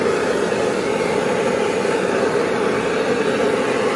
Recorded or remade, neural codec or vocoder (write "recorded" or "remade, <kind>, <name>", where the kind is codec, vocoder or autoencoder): recorded